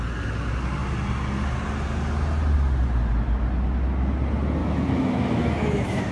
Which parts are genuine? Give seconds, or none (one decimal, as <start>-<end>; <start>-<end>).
0.0-4.6

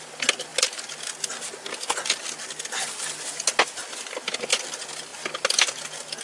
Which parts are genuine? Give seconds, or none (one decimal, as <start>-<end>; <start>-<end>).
0.0-6.2

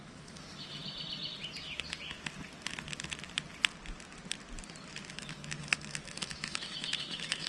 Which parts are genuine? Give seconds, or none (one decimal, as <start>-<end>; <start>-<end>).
0.8-5.1